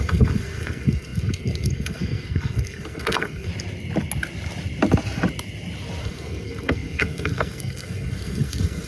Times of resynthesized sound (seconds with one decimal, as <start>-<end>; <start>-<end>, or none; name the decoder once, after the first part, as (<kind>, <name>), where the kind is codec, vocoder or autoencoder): 0.0-3.5 (codec, SNAC); 6.0-8.9